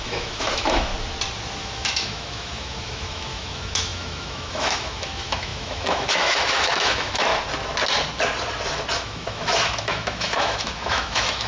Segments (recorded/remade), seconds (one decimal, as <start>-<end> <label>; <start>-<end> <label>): 0.0-0.9 remade; 0.9-1.6 recorded; 1.6-7.3 remade; 7.3-9.0 recorded; 9.0-11.5 remade